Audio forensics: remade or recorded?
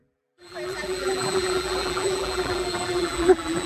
remade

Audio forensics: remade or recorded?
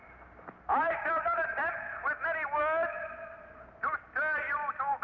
recorded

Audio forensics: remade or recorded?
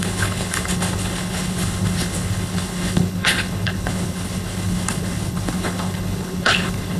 remade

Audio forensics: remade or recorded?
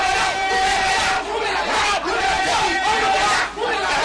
remade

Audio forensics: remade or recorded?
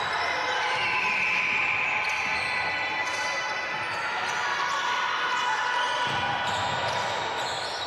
recorded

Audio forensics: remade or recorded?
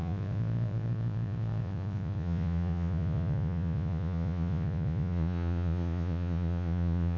remade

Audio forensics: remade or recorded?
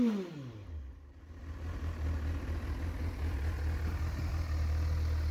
recorded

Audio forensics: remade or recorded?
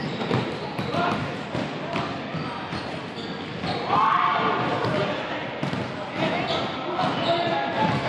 recorded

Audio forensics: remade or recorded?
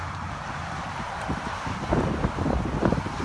recorded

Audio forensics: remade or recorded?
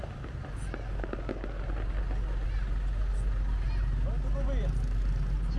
recorded